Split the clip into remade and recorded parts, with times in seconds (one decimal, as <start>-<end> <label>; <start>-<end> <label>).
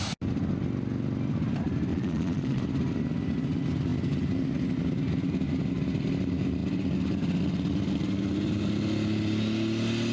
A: 0.0-1.9 recorded; 1.9-2.6 remade; 2.6-10.1 recorded